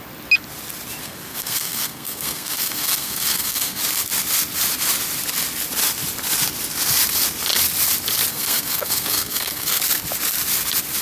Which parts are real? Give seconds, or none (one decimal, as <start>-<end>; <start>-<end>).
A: 0.0-1.0; 3.8-8.3; 9.8-11.0